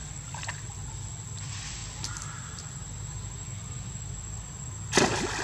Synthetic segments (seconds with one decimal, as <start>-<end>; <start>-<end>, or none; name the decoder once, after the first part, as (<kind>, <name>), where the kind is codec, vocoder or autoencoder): none